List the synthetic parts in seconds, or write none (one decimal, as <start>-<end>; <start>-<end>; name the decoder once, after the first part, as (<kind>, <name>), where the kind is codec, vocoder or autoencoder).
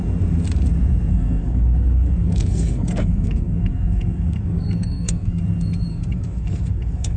1.1-5.4 (codec, SNAC); 5.9-7.2